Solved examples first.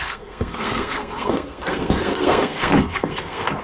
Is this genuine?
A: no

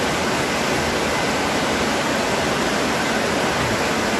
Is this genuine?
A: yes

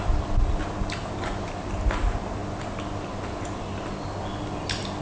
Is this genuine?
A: yes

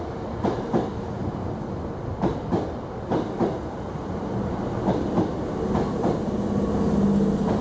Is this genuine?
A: yes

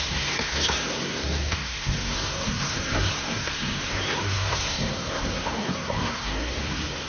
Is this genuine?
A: no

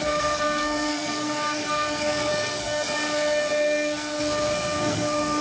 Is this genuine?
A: no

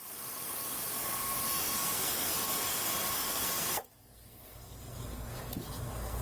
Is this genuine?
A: no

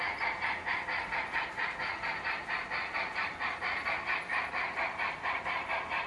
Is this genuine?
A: yes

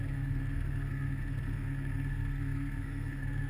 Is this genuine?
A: no